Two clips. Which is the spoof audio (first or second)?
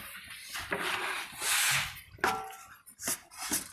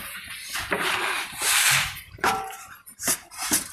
second